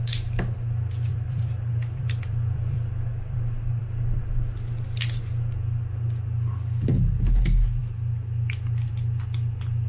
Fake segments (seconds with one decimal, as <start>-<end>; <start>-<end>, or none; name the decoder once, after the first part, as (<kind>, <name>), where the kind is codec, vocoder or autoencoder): 1.1-3.8 (vocoder, BigVGAN v2)